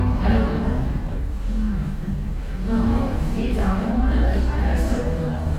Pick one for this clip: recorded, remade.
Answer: remade